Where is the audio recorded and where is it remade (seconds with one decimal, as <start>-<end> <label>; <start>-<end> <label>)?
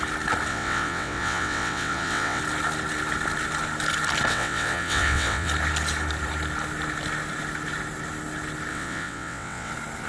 0.0-0.5 recorded; 0.5-2.4 remade; 2.4-4.3 recorded; 4.3-5.5 remade; 5.5-8.7 recorded; 8.7-9.7 remade; 9.7-10.1 recorded